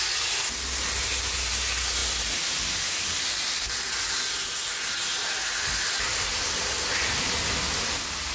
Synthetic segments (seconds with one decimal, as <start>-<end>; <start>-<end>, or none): none